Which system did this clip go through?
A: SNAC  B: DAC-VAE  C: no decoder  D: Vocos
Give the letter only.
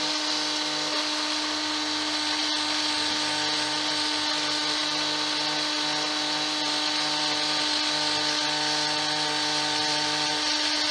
C